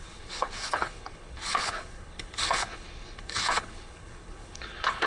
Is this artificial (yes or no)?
yes